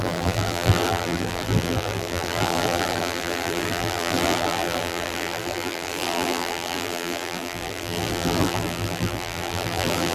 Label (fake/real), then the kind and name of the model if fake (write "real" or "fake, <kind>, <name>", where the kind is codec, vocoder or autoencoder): fake, vocoder, BigVGAN v2